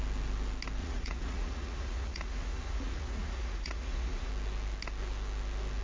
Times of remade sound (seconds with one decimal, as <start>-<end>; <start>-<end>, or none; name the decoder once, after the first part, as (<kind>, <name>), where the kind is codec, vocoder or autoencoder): 0.8-4.3 (vocoder, Vocos)